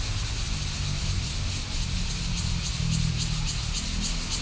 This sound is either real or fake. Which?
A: real